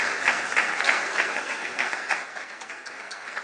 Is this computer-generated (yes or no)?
yes